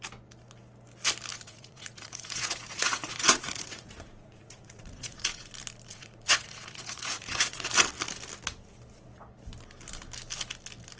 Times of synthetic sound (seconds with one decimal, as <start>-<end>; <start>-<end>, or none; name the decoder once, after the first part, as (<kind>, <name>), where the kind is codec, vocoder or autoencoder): 1.3-5.5 (vocoder, Vocos); 5.9-7.7